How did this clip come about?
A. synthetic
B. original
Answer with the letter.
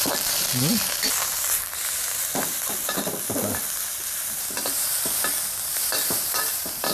A